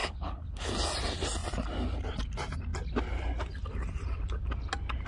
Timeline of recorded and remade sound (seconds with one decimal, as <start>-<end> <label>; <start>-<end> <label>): 0.0-0.7 remade; 0.7-5.1 recorded